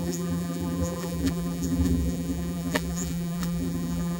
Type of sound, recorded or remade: remade